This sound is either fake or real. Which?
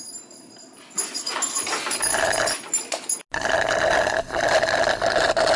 real